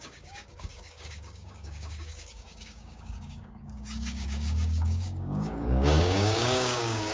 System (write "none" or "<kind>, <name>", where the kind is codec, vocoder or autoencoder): codec, DAC